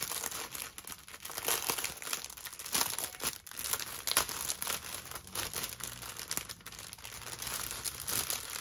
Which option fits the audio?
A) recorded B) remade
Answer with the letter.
A